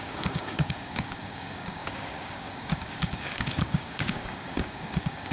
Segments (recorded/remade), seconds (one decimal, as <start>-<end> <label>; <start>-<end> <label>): 0.0-5.3 remade